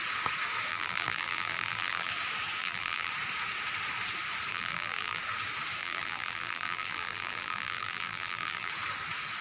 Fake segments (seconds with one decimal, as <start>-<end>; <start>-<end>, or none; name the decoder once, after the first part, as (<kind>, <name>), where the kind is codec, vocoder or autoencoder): 0.7-2.1 (vocoder, BigVGAN v2); 2.6-3.1; 4.5-5.2; 5.8-8.7